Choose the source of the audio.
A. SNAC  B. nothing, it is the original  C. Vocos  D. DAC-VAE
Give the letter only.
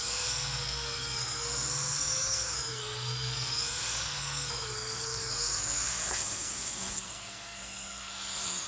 A